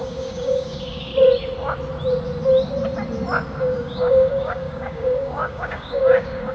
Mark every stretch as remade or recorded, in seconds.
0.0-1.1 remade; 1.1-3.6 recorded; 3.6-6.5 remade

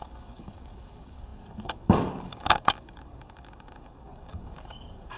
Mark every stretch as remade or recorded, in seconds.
0.0-5.2 remade

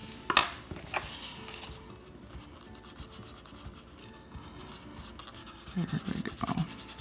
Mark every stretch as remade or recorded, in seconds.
0.0-4.0 recorded; 4.0-4.7 remade; 4.7-5.4 recorded; 5.4-6.0 remade; 6.0-7.0 recorded

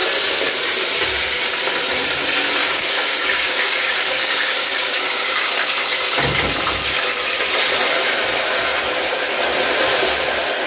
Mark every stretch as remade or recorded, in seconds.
0.0-2.6 recorded; 2.6-5.5 remade; 5.5-10.7 recorded